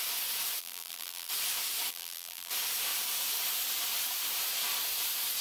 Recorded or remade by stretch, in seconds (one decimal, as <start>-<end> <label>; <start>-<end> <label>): 0.0-0.6 recorded; 0.6-1.3 remade; 1.3-1.9 recorded; 1.9-2.5 remade; 2.5-5.4 recorded